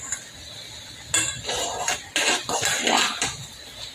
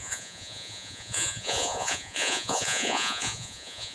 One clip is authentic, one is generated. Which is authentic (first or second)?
first